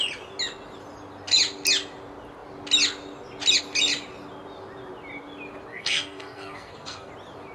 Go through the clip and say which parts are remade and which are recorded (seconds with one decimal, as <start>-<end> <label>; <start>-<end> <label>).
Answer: 0.0-5.7 recorded; 5.7-7.1 remade; 7.1-7.5 recorded